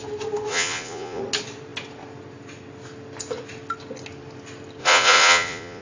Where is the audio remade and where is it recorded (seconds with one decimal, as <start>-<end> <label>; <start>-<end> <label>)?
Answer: 0.0-0.5 recorded; 0.5-1.2 remade; 1.2-4.8 recorded; 4.8-5.8 remade